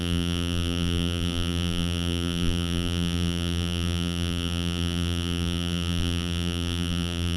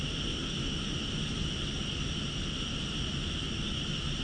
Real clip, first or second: second